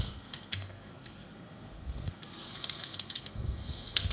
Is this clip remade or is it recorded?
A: remade